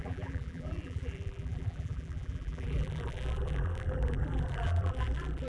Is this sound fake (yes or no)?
yes